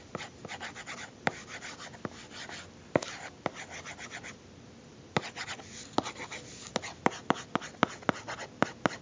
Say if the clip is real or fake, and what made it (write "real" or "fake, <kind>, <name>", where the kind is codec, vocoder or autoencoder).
real